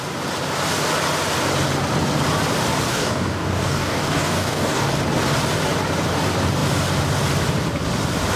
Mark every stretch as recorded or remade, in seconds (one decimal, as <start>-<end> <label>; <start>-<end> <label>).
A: 0.0-2.9 recorded; 2.9-4.9 remade; 4.9-8.4 recorded